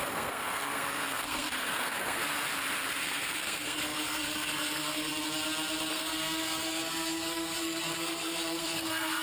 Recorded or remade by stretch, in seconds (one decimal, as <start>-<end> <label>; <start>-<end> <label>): 0.0-2.2 remade; 2.2-3.0 recorded; 3.0-5.1 remade; 5.1-5.9 recorded; 5.9-9.2 remade